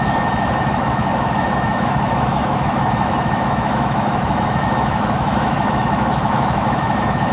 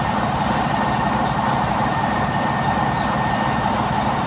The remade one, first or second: first